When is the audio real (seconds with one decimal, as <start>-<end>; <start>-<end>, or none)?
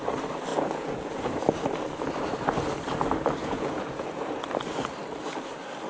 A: 0.0-0.5; 1.4-3.4; 4.3-5.9